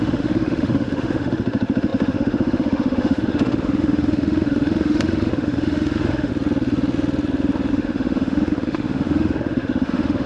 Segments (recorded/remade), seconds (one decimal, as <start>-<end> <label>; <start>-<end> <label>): 0.0-6.3 remade; 6.3-7.7 recorded; 7.7-10.3 remade